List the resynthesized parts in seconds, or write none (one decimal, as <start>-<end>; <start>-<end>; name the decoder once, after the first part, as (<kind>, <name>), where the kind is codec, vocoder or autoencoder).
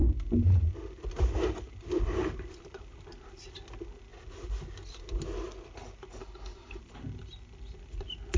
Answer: 6.2-6.8 (codec, HILCodec)